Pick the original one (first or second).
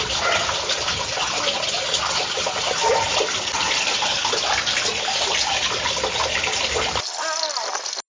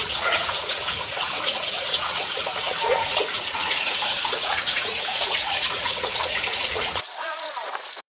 first